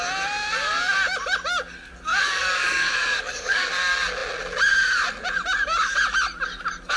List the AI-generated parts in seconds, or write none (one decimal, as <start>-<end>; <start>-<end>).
2.1-3.7